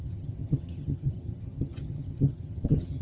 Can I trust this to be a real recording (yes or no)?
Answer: no